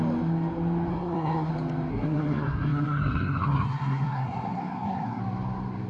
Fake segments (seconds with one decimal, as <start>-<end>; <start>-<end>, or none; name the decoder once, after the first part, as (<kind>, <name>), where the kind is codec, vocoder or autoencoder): 0.9-1.5 (codec, SNAC); 1.9-5.2